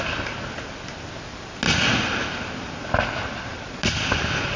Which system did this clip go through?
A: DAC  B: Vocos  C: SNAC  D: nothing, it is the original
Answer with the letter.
D